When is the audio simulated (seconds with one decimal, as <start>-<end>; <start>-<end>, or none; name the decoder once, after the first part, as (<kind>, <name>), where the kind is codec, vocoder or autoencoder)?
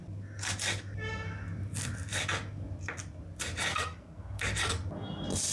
3.7-4.4 (codec, SNAC)